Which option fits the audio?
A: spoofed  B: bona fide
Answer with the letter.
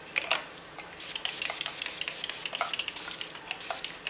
B